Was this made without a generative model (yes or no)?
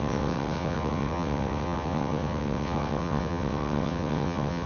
no